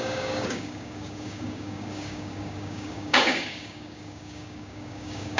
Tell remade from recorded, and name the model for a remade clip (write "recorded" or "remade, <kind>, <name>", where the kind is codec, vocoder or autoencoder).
remade, codec, DAC